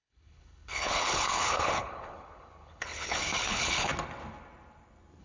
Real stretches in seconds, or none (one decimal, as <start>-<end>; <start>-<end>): 3.9-5.2